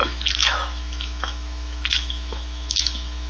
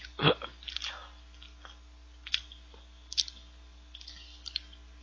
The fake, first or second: first